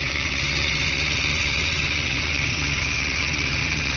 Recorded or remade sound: remade